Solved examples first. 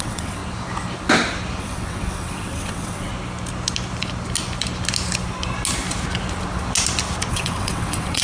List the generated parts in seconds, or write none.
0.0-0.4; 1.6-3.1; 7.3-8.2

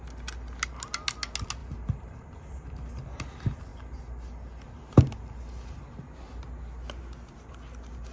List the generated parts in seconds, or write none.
1.6-2.9